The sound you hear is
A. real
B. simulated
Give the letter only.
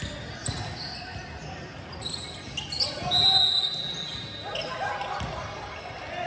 A